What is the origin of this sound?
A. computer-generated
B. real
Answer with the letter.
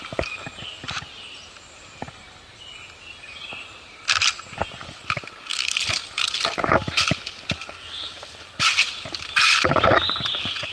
B